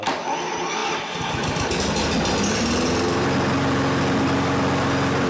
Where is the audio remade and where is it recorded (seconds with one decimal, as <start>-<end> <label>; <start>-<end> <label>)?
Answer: 0.0-5.3 recorded